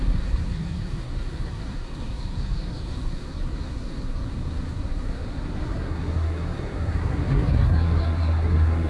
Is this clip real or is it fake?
fake